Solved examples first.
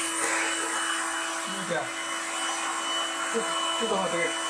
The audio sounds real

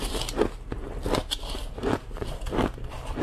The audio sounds real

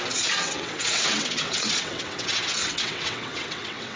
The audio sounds fake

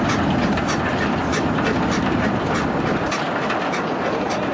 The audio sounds real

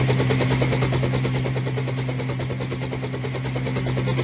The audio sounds real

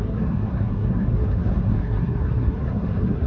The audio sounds fake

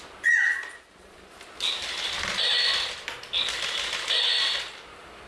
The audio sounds real